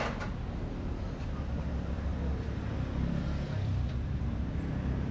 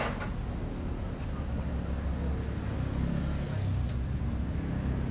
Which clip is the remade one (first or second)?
first